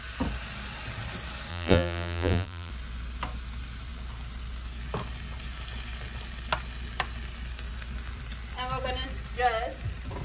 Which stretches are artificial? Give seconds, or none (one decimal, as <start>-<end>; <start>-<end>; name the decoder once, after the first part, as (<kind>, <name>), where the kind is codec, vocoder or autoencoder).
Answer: 1.5-2.7 (vocoder, BigVGAN v2)